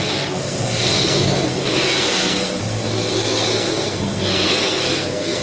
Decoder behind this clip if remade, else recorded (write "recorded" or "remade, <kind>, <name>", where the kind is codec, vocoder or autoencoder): remade, codec, SNAC